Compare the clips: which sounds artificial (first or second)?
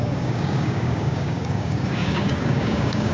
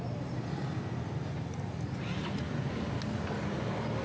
first